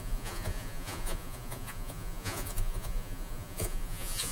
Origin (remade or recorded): remade